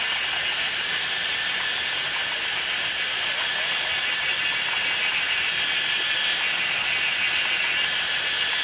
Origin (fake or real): real